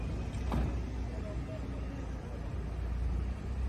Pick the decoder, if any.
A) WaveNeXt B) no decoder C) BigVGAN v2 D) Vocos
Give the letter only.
B